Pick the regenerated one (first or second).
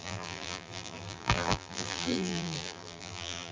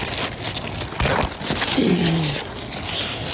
first